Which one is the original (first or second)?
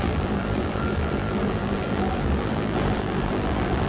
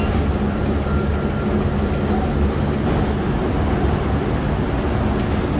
second